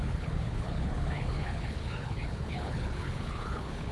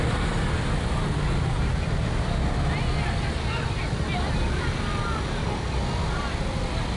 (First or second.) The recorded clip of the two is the second